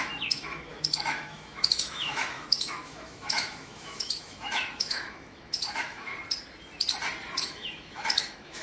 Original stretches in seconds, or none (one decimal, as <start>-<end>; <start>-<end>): 6.1-7.4